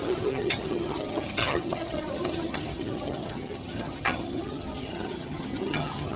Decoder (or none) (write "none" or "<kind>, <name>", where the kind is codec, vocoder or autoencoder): vocoder, HiFi-GAN